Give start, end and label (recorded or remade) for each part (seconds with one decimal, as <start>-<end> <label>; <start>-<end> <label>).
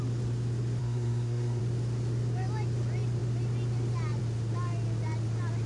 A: 0.0-0.8 recorded; 0.8-1.6 remade; 1.6-5.7 recorded